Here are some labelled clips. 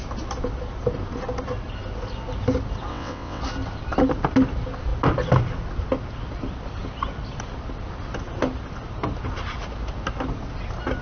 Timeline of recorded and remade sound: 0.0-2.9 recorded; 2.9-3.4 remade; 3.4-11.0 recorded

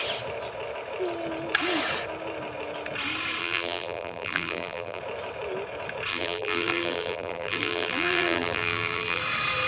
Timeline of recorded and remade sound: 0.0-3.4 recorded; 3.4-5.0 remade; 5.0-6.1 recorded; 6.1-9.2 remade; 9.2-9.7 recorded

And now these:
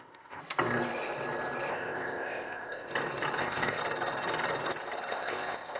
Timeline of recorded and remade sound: 0.0-0.4 remade; 0.4-1.7 recorded; 1.7-2.9 remade; 2.9-3.4 recorded; 3.4-3.8 remade; 3.8-5.1 recorded; 5.1-5.8 remade